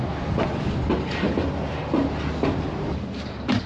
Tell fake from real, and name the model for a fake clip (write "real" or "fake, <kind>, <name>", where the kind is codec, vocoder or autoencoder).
real